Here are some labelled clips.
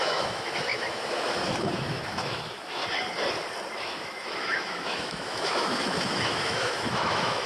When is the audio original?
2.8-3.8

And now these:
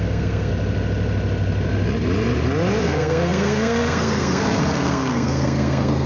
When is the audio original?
0.5-2.8

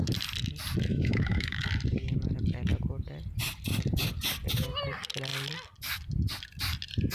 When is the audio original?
0.0-0.9; 1.7-7.1

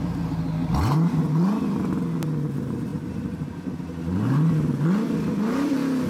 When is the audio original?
0.0-0.6; 1.2-2.9; 3.7-6.1

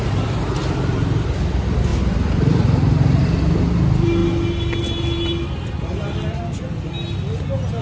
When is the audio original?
0.0-7.8

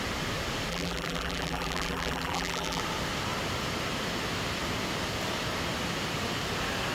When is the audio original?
0.0-0.7; 2.8-6.9